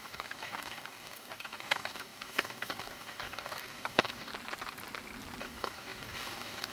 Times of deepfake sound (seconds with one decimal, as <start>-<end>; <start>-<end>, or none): 0.0-4.3; 5.4-6.7